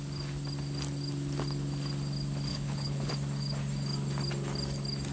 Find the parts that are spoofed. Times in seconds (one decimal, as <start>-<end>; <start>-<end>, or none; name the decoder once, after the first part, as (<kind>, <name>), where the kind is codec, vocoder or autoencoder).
2.5-3.1 (codec, HILCodec)